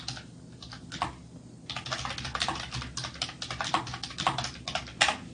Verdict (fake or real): real